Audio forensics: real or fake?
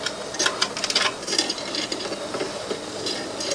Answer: real